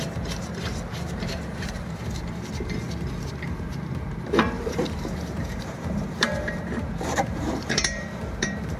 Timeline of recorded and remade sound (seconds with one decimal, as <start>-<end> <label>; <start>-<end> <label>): 0.0-2.0 remade; 2.0-3.3 recorded; 3.3-8.8 remade